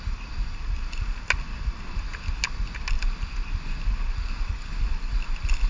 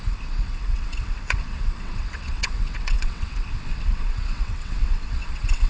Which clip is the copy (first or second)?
second